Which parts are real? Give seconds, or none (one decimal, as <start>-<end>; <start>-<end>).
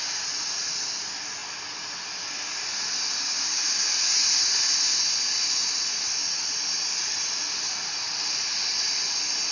0.0-9.5